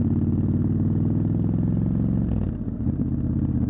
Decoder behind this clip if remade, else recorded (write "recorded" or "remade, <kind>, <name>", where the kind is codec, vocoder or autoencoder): recorded